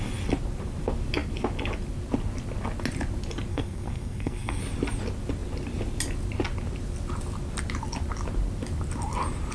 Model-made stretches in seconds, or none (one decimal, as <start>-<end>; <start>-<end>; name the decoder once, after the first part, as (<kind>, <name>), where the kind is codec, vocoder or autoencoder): 3.5-4.6 (codec, SNAC)